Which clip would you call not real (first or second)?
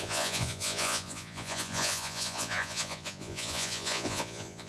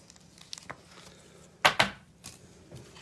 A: first